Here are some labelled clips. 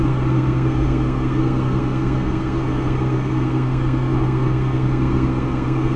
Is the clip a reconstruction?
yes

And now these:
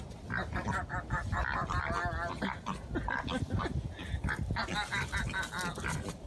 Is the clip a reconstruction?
no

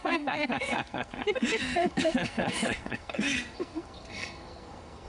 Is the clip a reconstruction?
yes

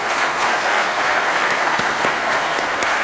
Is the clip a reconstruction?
yes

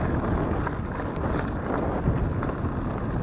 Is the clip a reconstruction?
no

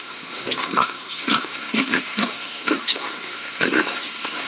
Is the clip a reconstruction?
yes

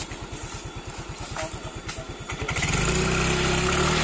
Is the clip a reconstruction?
no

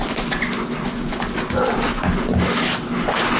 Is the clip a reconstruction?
no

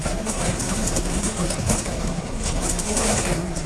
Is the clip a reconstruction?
yes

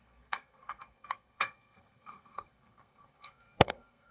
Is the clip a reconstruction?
yes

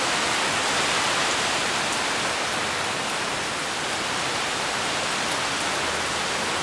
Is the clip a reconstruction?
no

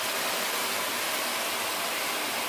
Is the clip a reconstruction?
no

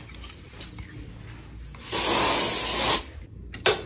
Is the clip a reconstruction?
no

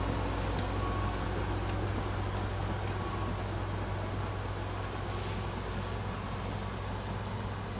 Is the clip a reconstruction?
no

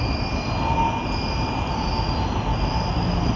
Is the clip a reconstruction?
no